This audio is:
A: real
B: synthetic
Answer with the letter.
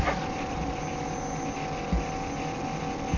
A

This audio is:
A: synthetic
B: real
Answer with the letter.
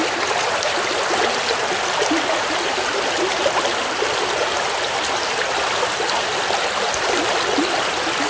B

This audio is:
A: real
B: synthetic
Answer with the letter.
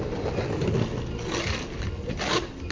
A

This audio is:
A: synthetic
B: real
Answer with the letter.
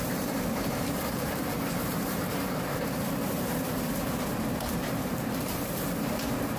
A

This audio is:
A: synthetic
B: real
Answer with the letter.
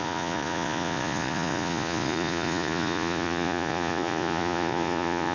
A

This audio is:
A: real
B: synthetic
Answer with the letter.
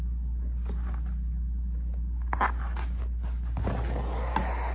A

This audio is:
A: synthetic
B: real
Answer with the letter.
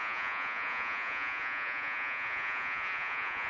A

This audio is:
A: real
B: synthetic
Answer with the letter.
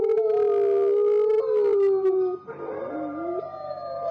A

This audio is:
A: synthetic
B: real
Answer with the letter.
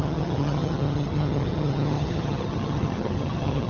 A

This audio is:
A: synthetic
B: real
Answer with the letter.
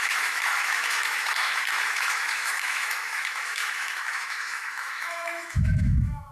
A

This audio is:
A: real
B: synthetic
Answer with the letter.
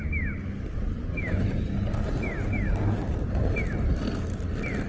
A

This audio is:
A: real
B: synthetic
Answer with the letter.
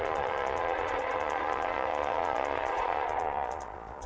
B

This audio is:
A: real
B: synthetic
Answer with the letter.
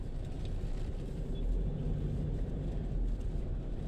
A